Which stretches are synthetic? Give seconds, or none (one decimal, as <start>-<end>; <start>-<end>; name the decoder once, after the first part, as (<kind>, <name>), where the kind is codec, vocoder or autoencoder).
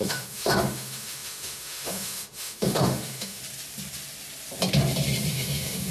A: 0.0-3.4 (autoencoder, DAC-VAE); 5.3-5.9